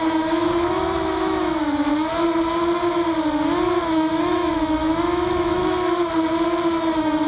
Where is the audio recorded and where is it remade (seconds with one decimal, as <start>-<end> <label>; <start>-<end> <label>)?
0.0-1.9 remade; 1.9-3.8 recorded; 3.8-5.6 remade; 5.6-6.8 recorded; 6.8-7.3 remade